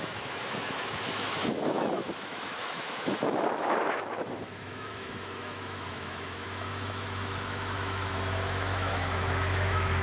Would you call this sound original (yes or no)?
no